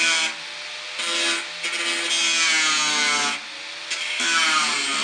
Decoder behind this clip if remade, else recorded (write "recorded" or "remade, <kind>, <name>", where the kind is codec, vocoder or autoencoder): recorded